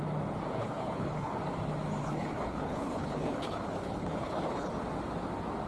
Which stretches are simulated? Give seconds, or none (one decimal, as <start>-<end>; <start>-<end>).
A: 0.6-1.4; 2.0-4.7